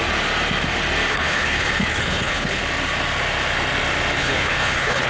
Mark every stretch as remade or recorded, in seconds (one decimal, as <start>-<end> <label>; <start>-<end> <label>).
0.0-1.1 recorded; 1.1-2.6 remade; 2.6-4.2 recorded; 4.2-5.1 remade